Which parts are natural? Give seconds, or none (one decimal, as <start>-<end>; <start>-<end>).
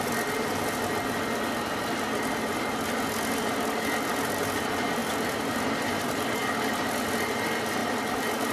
0.0-8.5